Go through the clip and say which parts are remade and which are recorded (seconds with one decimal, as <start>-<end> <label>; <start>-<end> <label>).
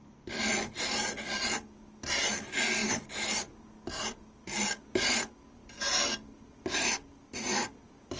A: 0.0-8.2 recorded